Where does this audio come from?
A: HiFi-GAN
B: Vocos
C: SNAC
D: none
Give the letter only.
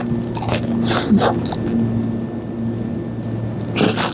D